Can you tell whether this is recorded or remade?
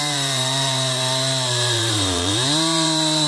remade